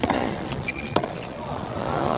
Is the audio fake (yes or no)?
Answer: yes